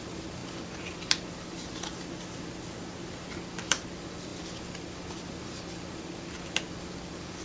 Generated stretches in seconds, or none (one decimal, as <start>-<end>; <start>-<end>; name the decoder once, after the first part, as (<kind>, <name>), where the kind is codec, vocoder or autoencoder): none